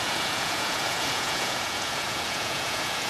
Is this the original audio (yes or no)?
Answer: no